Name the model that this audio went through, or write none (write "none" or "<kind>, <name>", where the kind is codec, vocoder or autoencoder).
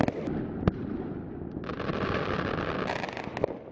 none